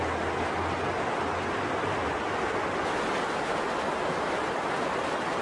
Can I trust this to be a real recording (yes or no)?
yes